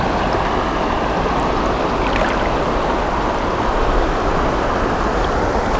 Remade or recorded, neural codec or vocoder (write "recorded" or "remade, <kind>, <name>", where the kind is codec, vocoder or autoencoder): recorded